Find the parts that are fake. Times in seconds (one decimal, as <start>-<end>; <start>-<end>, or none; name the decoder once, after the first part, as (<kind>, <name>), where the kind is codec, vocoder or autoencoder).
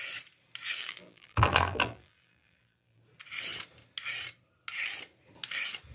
0.8-3.0 (vocoder, BigVGAN v2)